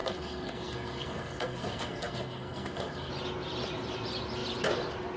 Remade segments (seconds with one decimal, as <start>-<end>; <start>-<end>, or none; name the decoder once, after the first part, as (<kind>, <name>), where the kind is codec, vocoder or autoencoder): 0.0-3.1 (codec, SNAC)